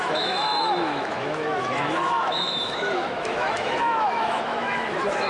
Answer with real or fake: fake